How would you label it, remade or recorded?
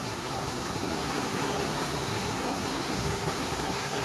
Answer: remade